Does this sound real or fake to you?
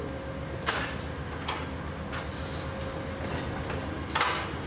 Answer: real